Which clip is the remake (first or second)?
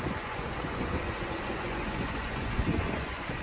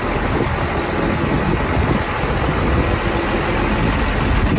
first